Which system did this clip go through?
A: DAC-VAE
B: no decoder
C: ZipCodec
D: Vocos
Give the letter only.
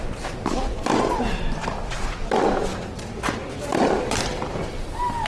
B